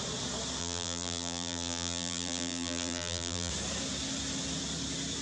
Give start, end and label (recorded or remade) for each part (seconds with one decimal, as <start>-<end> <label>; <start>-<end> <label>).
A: 0.0-0.6 recorded; 0.6-3.5 remade; 3.5-5.2 recorded